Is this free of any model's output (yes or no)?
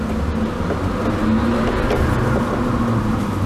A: yes